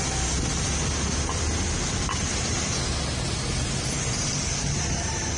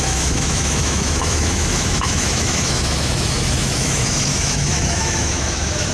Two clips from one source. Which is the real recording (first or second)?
first